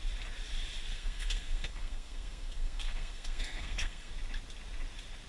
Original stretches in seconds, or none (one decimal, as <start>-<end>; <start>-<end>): 0.0-0.9; 4.1-5.3